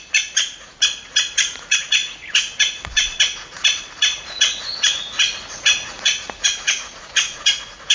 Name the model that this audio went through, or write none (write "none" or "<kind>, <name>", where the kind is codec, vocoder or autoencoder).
vocoder, Vocos